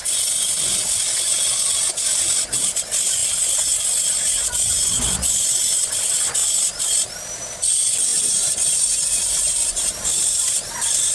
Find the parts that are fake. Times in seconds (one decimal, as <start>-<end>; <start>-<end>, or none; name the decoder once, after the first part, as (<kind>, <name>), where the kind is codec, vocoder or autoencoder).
6.4-6.9 (vocoder, BigVGAN v2); 8.1-11.1